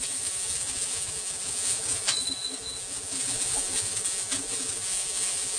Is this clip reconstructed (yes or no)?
yes